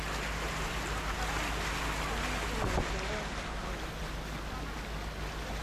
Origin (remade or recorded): recorded